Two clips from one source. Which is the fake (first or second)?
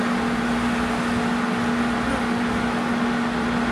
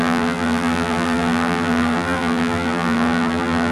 second